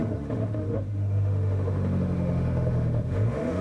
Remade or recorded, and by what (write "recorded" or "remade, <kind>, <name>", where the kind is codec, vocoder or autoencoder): remade, autoencoder, DAC-VAE